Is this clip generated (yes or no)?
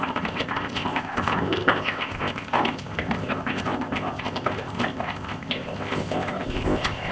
yes